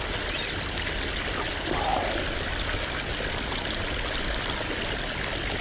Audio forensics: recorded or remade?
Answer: recorded